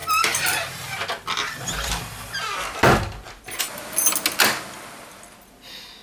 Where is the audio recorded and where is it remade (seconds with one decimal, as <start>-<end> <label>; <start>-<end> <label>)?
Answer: 0.0-6.0 recorded